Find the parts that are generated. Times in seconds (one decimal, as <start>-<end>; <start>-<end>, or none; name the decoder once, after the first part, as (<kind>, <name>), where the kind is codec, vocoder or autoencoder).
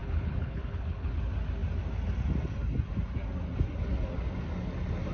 0.0-1.2 (codec, HILCodec)